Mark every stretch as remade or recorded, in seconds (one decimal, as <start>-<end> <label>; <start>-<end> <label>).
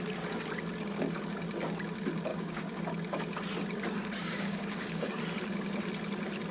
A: 0.0-2.3 recorded; 2.3-2.8 remade; 2.8-4.2 recorded; 4.2-5.2 remade; 5.2-6.5 recorded